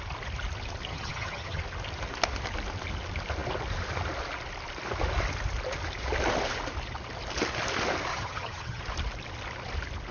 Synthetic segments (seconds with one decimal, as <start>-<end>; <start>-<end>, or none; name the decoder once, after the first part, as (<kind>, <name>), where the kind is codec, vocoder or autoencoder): 0.9-1.6 (vocoder, HiFi-GAN); 8.1-8.8